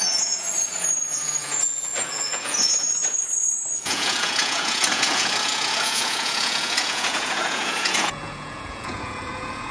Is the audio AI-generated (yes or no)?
yes